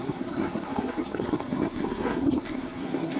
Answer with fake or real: fake